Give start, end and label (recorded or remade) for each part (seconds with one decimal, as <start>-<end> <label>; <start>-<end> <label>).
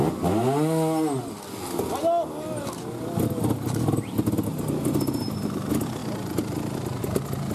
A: 0.0-7.5 recorded